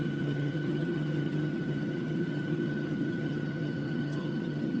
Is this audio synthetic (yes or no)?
yes